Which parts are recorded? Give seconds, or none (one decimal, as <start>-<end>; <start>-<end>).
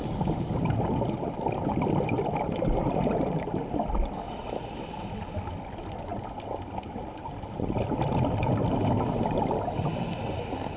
0.0-10.8